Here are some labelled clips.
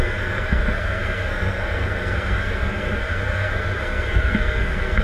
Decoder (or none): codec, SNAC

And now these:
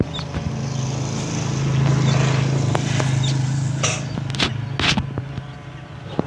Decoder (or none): none